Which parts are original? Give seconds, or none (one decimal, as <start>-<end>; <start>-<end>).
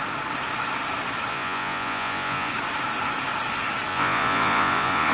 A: 0.0-1.3; 2.5-3.9